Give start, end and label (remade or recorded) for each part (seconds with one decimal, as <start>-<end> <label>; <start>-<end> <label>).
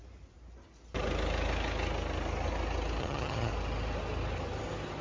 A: 0.0-3.0 recorded; 3.0-3.5 remade; 3.5-5.0 recorded